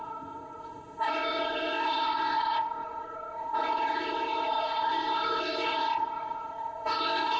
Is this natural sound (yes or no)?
no